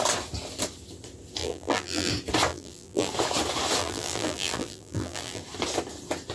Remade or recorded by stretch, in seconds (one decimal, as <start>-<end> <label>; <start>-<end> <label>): 0.0-1.4 recorded; 1.4-2.1 remade; 2.1-2.5 recorded; 2.5-3.1 remade; 3.1-3.8 recorded; 3.8-5.4 remade; 5.4-6.3 recorded